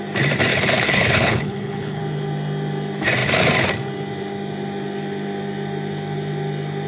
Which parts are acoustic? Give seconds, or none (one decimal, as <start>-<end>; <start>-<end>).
0.0-0.5; 2.0-6.9